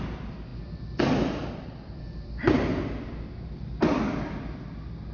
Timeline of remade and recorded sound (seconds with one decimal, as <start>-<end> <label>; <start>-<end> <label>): 0.0-5.1 recorded